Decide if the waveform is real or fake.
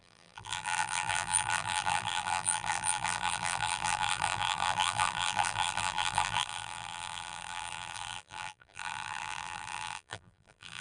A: fake